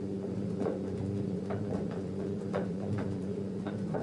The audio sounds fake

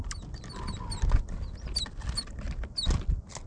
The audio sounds real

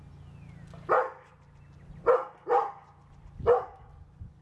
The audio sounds real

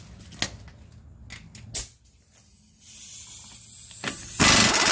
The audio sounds real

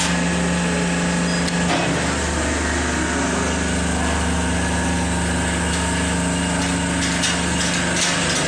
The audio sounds real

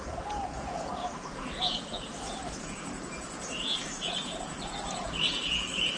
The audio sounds fake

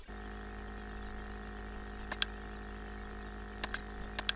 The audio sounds real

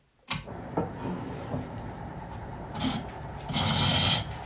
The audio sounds real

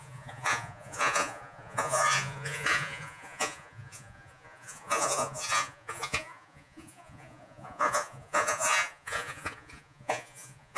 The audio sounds fake